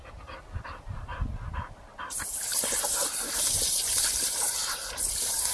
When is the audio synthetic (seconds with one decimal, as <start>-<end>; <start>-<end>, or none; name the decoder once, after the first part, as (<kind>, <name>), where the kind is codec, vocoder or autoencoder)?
0.7-1.1 (vocoder, BigVGAN v2); 2.0-5.5